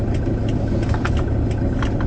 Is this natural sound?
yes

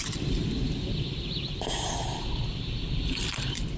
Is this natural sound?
yes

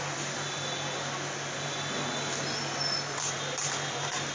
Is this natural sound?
yes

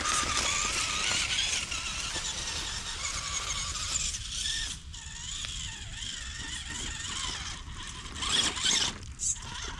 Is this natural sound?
yes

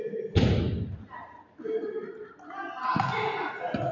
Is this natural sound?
yes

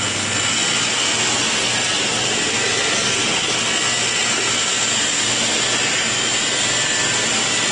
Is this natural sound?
yes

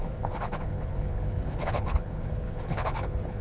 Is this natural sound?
no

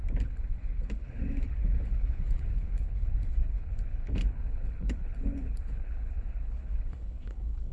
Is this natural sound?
no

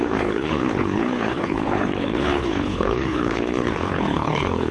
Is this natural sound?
no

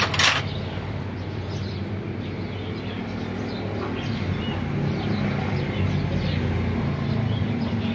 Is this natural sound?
yes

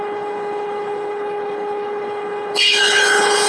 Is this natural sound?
no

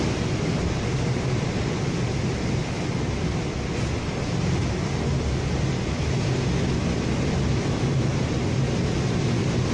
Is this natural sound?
yes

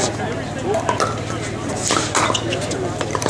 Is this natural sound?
yes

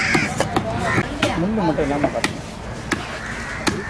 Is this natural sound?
yes